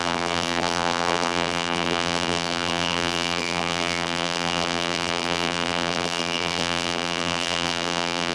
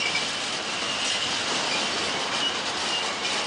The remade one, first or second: first